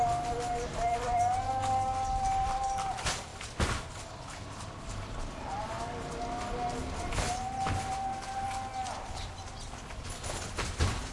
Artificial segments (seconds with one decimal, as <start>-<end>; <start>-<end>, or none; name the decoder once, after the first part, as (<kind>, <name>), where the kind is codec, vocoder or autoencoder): none